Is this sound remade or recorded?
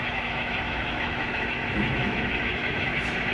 remade